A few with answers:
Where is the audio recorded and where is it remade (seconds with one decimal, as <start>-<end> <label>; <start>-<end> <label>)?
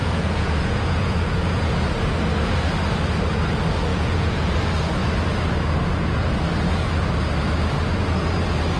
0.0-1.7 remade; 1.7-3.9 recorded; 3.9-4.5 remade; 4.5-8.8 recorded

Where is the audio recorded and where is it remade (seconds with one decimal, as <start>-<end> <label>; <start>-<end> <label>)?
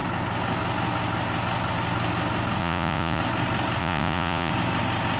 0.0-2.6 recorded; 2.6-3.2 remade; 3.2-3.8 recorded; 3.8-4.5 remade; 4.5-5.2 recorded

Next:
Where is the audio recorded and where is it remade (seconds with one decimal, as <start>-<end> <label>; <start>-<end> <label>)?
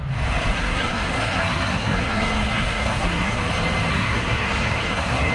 0.0-0.5 recorded; 0.5-3.4 remade; 3.4-3.9 recorded; 3.9-5.3 remade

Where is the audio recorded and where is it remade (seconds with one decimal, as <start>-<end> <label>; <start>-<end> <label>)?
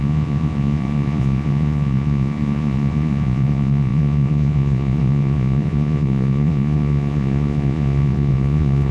0.0-8.9 remade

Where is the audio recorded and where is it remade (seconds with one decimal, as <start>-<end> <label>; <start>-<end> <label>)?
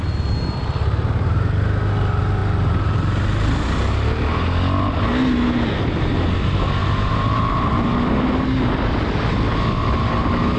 0.0-6.8 recorded; 6.8-7.7 remade; 7.7-10.6 recorded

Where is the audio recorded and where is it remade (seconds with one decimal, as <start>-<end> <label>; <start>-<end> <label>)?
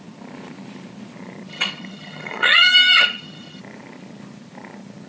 0.0-1.5 recorded; 1.5-3.6 remade; 3.6-5.1 recorded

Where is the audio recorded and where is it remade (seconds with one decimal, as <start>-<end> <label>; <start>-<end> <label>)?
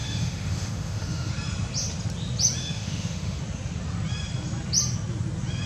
0.0-1.3 remade; 1.3-2.6 recorded; 2.6-3.4 remade; 3.4-5.7 recorded